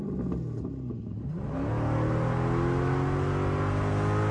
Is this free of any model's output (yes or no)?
yes